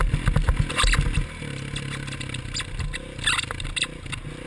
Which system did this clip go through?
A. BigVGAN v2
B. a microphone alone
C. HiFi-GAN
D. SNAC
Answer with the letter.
B